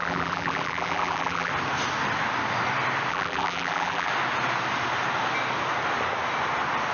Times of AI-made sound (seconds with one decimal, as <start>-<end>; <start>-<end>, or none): 0.0-1.5; 3.1-4.1